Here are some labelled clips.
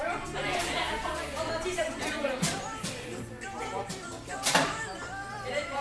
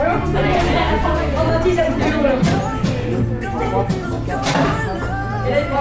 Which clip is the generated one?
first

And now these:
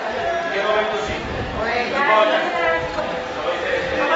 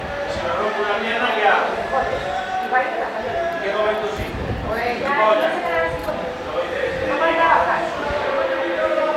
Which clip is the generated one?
second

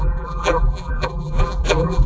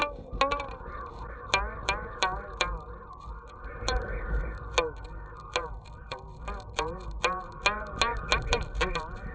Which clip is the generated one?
first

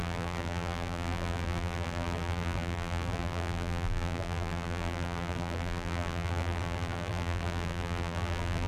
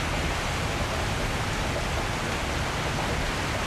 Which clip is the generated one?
first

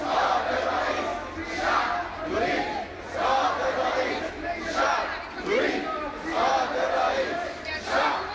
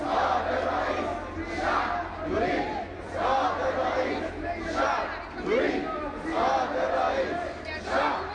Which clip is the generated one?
first